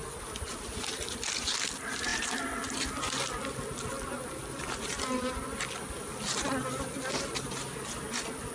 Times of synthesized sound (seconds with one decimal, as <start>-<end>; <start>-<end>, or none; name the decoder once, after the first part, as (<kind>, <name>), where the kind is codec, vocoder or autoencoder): none